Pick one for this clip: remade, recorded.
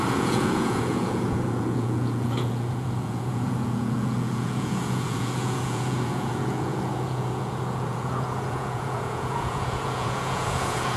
remade